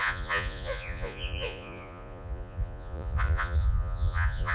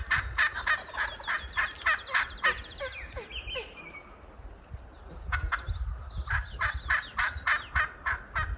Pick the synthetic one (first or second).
first